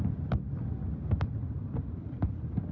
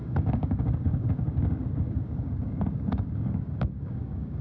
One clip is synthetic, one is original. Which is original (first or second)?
first